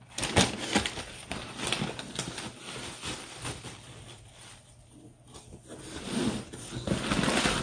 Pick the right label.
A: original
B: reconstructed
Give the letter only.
A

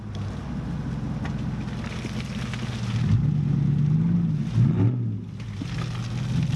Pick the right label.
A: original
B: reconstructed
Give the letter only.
A